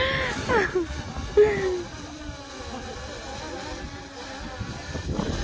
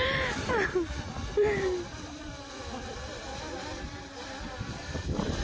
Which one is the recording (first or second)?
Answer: first